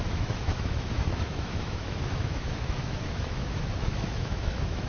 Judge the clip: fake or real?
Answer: fake